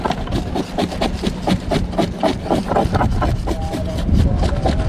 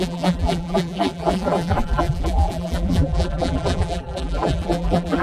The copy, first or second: second